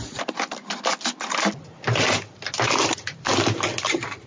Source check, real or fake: real